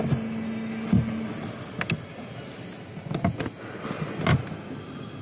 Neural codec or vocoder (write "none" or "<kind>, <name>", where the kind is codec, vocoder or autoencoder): none